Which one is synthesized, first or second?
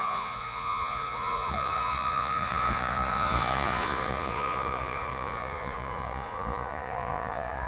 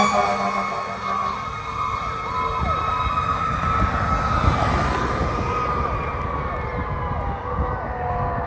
first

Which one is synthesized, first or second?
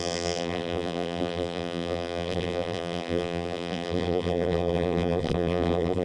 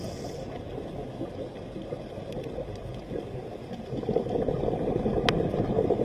first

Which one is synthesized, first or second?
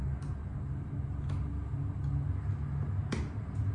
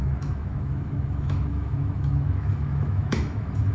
second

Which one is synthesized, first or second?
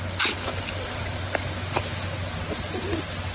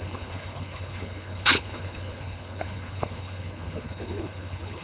second